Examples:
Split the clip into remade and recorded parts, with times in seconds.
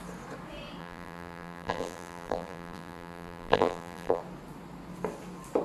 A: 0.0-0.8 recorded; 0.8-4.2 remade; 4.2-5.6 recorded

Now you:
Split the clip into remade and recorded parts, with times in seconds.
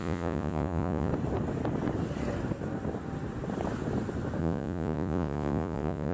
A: 0.0-1.1 remade; 1.1-4.4 recorded; 4.4-6.1 remade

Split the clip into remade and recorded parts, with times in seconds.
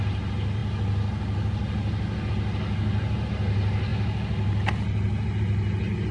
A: 0.0-6.1 recorded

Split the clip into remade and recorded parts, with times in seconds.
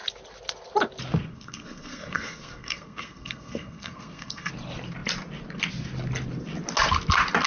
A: 0.0-1.3 recorded; 1.3-4.5 remade; 4.5-7.5 recorded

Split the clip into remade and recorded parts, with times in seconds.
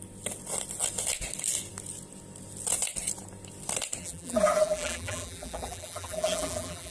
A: 0.0-4.0 recorded; 4.0-6.9 remade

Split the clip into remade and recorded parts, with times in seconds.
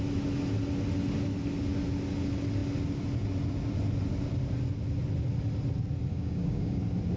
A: 0.0-6.1 recorded; 6.1-6.8 remade; 6.8-7.2 recorded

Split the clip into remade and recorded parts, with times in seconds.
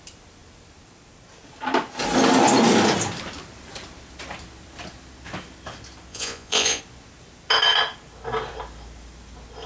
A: 0.0-6.1 recorded; 6.1-6.8 remade; 6.8-9.7 recorded